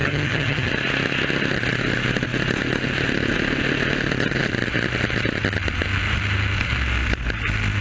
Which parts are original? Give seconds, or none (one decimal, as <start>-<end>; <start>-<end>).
0.7-7.8

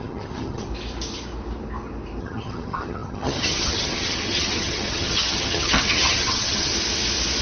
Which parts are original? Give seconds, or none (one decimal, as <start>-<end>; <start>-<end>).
0.7-2.2; 6.7-7.4

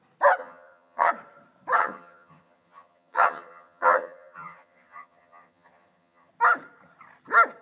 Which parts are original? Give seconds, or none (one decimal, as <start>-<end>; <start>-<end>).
0.0-0.4; 1.1-1.8; 6.3-7.6

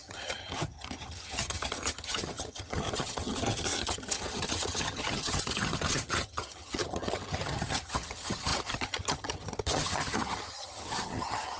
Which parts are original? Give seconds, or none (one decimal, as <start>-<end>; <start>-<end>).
none

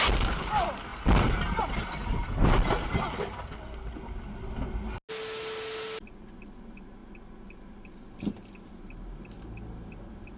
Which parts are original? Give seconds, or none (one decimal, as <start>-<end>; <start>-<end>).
0.0-10.4

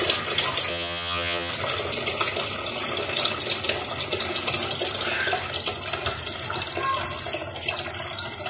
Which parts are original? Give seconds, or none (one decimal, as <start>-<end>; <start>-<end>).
0.0-0.7; 1.5-8.5